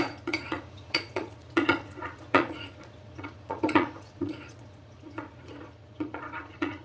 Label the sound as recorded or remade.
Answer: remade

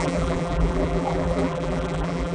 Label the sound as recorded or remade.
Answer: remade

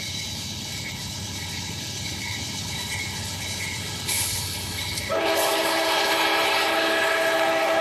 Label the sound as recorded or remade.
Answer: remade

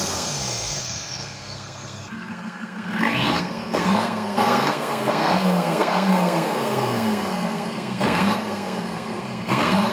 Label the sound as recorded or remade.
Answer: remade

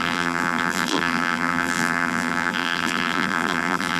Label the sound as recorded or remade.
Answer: remade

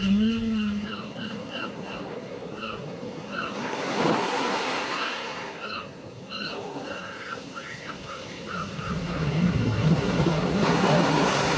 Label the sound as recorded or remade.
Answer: remade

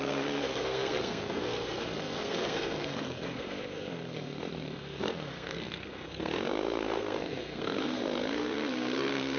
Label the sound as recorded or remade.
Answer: remade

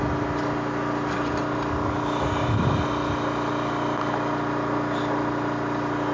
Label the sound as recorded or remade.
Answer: recorded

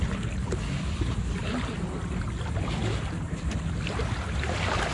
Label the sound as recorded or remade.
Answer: recorded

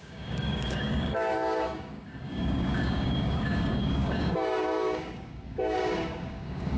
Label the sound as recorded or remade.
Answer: remade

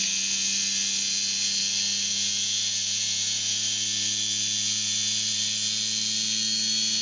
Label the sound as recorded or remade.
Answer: recorded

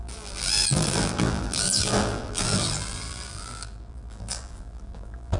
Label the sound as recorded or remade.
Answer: remade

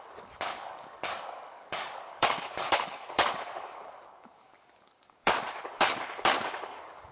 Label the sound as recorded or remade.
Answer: remade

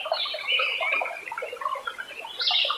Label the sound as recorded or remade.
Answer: recorded